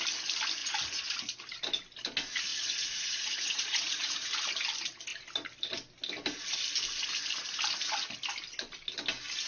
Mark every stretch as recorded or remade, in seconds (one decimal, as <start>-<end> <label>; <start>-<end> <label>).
0.0-2.5 recorded; 2.5-4.3 remade; 4.3-9.5 recorded